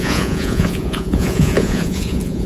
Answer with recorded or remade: remade